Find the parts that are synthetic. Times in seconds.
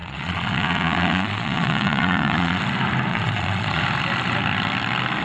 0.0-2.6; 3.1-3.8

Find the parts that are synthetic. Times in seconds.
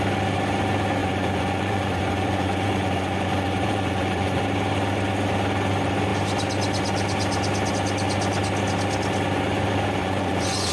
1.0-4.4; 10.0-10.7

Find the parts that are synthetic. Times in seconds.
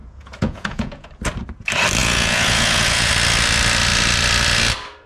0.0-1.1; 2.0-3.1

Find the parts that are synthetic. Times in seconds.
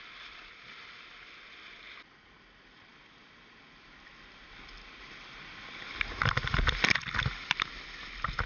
none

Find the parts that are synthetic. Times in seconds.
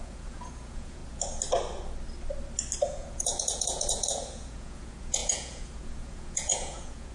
0.0-1.0; 2.8-7.1